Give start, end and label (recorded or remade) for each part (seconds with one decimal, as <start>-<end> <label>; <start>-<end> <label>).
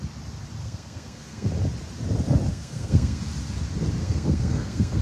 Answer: 0.0-0.6 recorded; 0.6-1.5 remade; 1.5-2.5 recorded; 2.5-3.2 remade; 3.2-4.0 recorded; 4.0-5.0 remade